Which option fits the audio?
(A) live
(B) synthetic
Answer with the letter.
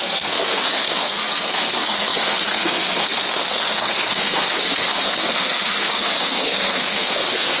B